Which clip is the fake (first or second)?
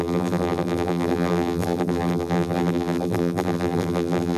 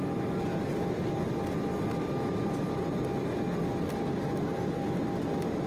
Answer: first